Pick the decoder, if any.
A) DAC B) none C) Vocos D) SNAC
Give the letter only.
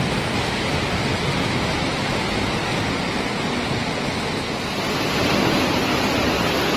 B